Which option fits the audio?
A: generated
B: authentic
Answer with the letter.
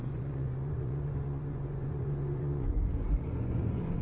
A